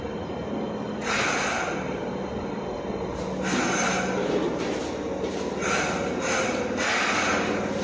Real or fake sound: real